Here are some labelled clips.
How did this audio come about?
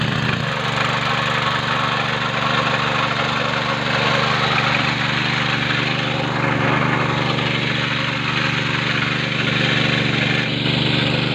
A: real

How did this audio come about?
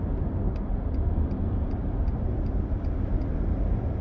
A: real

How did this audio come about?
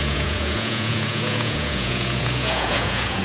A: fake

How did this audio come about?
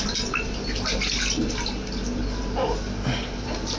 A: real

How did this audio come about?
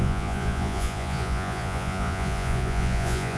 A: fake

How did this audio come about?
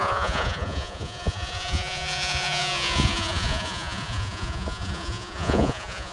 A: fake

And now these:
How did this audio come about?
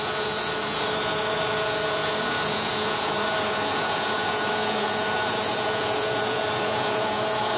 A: fake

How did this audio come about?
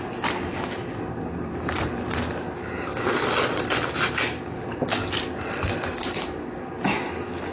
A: real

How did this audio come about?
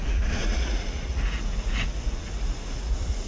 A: fake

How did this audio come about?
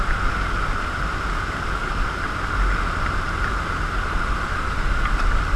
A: real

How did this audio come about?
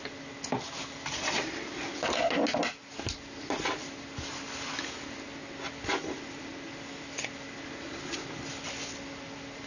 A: real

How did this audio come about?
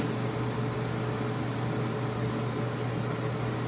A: real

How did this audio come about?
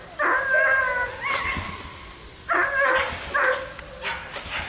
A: real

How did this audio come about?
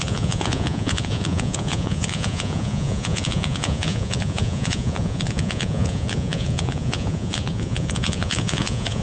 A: fake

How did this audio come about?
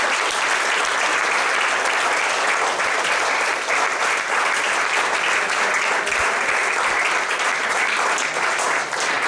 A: real